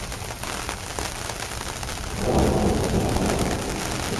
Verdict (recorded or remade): recorded